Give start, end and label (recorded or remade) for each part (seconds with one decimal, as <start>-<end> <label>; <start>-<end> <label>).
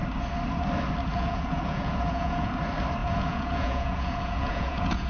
0.0-1.1 recorded; 1.1-2.5 remade; 2.5-3.0 recorded; 3.0-5.1 remade